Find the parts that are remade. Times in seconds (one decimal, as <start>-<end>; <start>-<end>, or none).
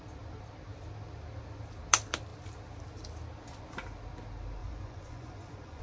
4.6-5.8